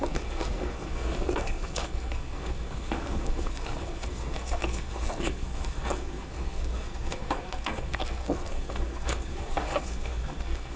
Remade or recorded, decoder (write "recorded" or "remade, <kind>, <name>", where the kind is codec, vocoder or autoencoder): remade, codec, SNAC